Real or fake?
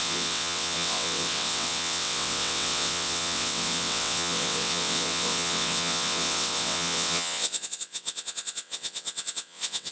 fake